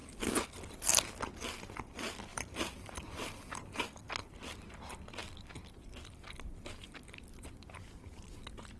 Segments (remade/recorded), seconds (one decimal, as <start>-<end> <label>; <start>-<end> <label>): 0.0-2.3 recorded; 2.3-3.8 remade; 3.8-8.8 recorded